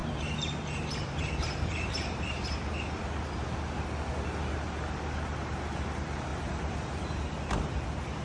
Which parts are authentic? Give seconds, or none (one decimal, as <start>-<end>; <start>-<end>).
2.7-6.3; 7.2-8.2